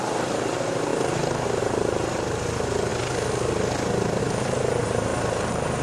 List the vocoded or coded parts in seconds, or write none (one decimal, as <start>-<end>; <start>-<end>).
0.0-2.9; 4.2-5.8